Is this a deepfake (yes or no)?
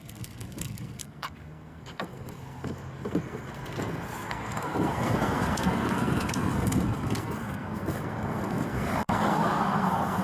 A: yes